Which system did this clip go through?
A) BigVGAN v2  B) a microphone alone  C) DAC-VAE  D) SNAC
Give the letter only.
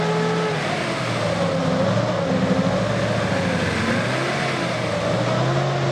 B